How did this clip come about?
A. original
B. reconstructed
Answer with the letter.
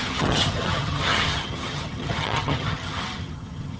B